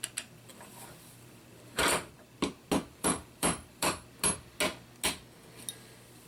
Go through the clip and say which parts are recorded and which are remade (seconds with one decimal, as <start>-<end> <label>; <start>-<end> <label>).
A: 0.0-1.5 recorded; 1.5-2.1 remade; 2.1-2.9 recorded; 2.9-3.9 remade; 3.9-6.3 recorded